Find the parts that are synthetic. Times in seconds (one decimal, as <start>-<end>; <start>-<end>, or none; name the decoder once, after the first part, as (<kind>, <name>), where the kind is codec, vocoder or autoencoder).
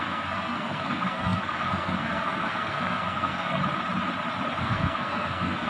0.0-3.6 (codec, SNAC); 4.6-5.7